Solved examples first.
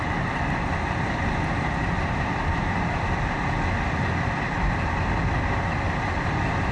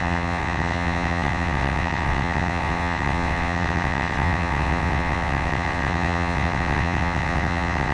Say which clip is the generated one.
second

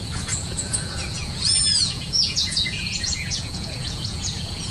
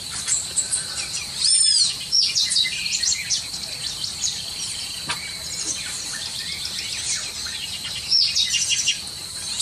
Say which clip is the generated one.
first